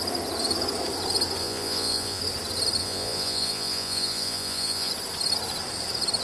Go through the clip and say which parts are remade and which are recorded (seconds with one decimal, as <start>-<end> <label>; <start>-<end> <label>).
0.0-1.4 recorded; 1.4-2.2 remade; 2.2-2.8 recorded; 2.8-4.9 remade; 4.9-6.2 recorded